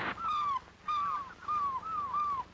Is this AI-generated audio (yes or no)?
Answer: no